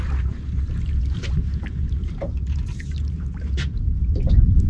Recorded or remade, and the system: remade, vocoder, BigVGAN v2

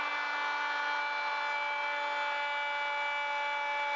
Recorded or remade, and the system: recorded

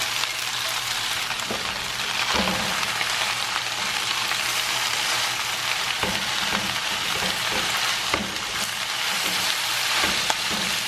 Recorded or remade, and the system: remade, vocoder, BigVGAN v2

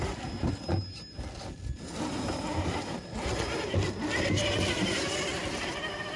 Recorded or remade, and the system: recorded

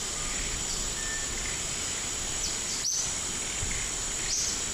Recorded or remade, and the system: recorded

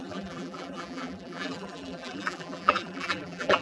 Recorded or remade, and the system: remade, vocoder, BigVGAN v2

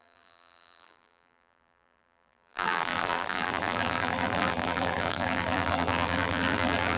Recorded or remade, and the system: remade, vocoder, BigVGAN v2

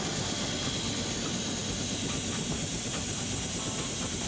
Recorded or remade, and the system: remade, vocoder, BigVGAN v2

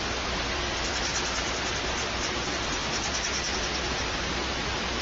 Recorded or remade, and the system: remade, vocoder, BigVGAN v2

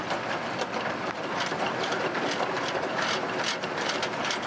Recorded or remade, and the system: recorded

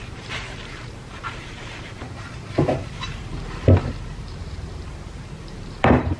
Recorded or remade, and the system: remade, vocoder, BigVGAN v2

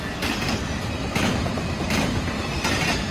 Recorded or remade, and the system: remade, vocoder, BigVGAN v2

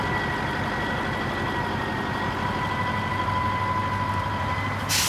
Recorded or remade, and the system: recorded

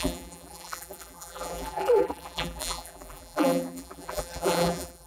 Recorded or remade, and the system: remade, vocoder, BigVGAN v2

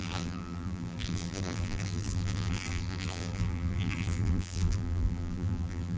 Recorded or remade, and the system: remade, vocoder, BigVGAN v2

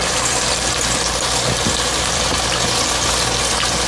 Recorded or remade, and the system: remade, vocoder, BigVGAN v2